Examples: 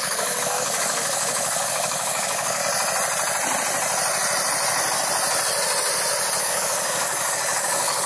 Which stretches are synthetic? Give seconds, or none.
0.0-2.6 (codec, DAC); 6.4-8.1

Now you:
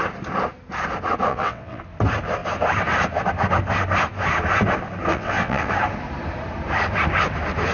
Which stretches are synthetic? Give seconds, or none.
1.3-1.8 (vocoder, WaveNeXt); 5.1-5.7